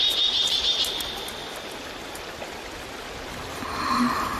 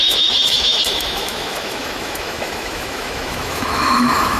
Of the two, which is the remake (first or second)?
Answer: second